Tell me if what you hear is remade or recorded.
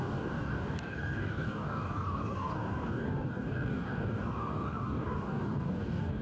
remade